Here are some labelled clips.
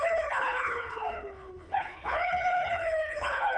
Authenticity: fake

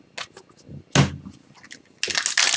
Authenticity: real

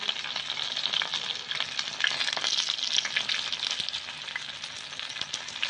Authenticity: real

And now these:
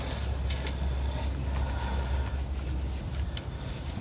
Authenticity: real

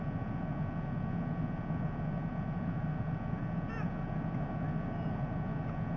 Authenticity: real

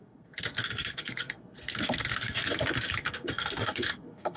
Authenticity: fake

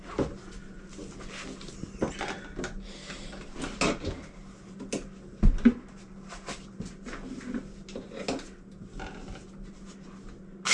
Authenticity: real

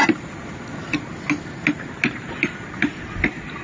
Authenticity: real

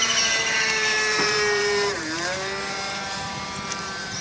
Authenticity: fake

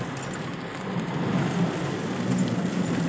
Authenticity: real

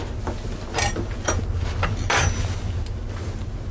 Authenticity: real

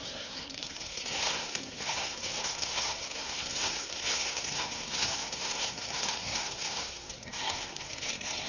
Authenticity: fake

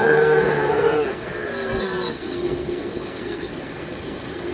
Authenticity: fake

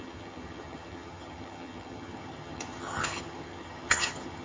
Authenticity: fake